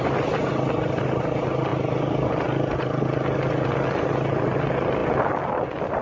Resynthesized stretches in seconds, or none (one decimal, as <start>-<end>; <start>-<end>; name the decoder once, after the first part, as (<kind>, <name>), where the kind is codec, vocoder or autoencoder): none